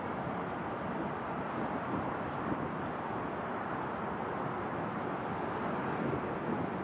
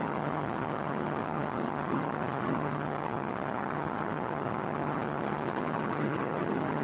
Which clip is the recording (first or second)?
first